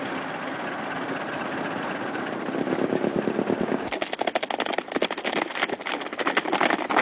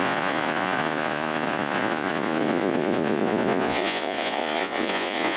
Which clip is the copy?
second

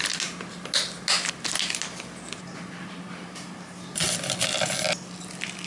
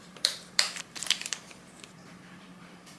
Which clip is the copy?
second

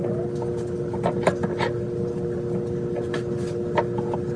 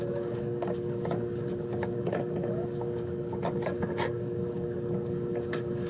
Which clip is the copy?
second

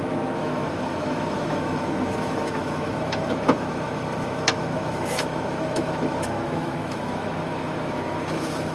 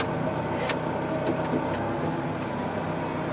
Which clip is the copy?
first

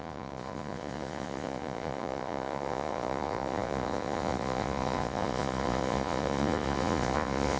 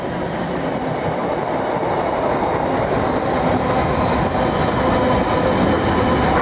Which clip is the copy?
first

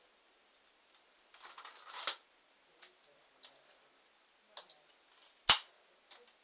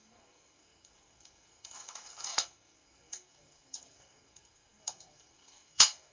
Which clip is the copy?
second